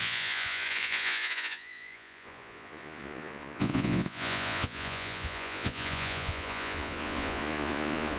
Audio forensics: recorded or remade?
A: remade